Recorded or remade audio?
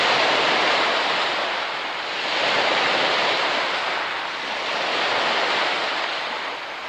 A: recorded